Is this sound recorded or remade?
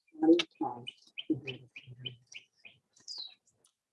recorded